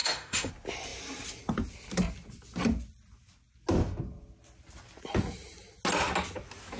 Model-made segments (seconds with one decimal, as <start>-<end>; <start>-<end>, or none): 0.0-0.5